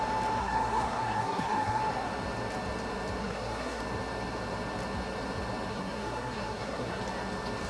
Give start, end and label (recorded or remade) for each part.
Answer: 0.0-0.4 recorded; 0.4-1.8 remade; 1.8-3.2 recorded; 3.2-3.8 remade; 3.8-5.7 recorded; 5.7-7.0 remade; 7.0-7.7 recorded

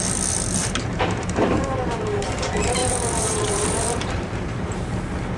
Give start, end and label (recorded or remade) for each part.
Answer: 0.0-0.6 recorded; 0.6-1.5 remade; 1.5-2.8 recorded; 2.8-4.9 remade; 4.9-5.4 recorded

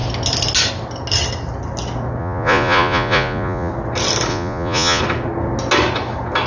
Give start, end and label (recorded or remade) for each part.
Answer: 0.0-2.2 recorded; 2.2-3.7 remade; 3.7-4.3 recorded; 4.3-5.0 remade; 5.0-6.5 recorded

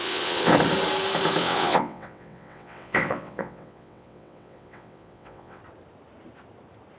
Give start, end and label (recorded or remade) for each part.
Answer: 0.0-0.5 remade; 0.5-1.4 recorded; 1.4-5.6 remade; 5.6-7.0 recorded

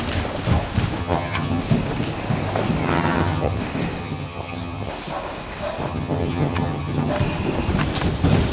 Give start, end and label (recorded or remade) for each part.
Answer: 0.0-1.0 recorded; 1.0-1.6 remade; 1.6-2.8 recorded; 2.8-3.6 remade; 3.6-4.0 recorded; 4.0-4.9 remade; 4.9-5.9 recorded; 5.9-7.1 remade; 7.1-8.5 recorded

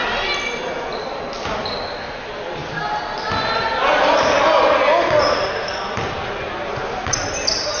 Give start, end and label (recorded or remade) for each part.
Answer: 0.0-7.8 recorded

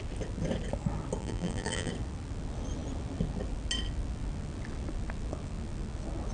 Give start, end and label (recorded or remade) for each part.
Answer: 0.0-1.2 recorded; 1.2-1.9 remade; 1.9-6.3 recorded